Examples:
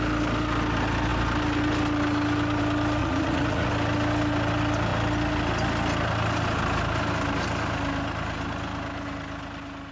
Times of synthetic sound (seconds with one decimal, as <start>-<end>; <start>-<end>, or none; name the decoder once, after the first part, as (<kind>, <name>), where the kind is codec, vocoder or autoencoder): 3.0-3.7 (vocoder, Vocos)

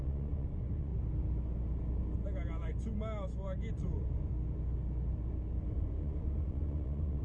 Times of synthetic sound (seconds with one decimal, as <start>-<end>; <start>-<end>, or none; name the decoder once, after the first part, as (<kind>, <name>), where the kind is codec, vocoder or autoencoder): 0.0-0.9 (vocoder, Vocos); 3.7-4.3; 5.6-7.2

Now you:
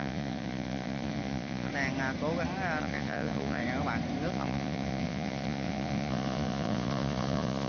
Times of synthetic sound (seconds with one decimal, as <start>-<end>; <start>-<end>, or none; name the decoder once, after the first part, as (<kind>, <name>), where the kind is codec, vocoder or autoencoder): 0.0-1.7 (vocoder, Vocos); 2.8-3.6; 4.3-7.7

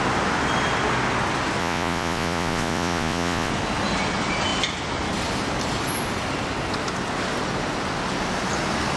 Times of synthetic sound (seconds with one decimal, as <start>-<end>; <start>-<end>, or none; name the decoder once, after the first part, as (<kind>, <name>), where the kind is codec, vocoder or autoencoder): 1.6-3.5 (vocoder, Vocos)

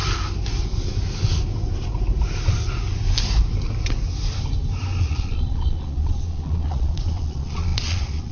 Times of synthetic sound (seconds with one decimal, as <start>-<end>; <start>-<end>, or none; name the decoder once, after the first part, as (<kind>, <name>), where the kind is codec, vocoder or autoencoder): 5.0-8.3 (vocoder, Vocos)